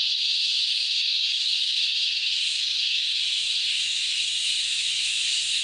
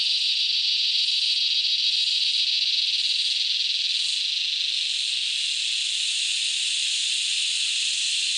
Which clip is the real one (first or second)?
second